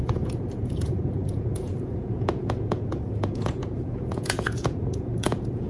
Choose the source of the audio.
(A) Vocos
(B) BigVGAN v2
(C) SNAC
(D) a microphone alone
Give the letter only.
A